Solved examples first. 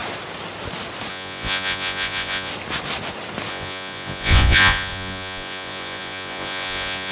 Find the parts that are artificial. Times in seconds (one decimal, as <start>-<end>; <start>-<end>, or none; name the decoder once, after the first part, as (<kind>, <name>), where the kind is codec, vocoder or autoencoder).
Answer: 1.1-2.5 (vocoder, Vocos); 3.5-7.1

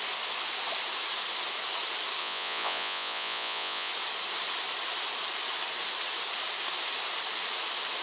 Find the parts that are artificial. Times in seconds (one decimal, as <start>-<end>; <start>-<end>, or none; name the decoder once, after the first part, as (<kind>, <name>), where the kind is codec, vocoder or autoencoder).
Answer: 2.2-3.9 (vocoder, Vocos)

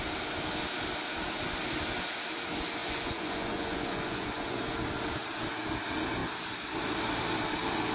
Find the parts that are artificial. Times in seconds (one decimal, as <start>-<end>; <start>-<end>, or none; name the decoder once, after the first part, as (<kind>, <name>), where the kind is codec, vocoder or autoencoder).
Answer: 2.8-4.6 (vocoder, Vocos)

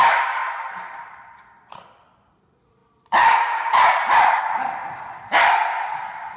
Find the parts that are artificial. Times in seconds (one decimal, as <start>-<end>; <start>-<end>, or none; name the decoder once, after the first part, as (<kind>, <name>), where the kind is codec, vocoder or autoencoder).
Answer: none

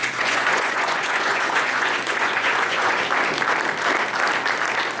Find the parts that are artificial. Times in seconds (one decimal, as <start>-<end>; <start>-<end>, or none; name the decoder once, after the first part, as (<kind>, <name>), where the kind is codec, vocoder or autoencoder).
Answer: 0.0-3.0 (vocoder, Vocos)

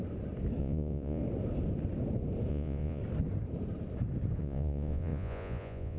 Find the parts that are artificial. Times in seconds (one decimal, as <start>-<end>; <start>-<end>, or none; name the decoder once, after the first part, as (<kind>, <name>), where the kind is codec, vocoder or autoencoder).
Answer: 0.6-1.2 (vocoder, Vocos); 2.5-3.0; 4.4-6.0

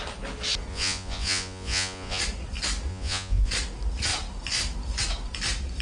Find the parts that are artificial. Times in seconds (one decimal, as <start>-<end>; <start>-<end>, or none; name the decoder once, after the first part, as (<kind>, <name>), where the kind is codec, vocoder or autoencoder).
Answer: 0.7-2.2 (vocoder, Vocos); 2.9-3.5

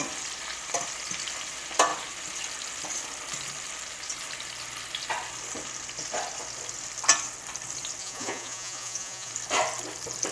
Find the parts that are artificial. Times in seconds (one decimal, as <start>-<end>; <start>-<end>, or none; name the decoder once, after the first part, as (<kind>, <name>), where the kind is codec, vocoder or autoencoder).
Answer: 8.0-9.3 (vocoder, Vocos)